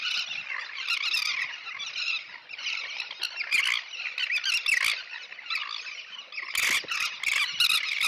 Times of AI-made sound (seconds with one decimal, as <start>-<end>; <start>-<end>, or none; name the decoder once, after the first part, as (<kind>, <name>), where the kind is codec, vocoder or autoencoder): none